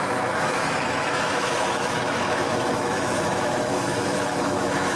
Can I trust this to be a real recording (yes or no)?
no